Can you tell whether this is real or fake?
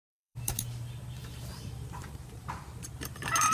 fake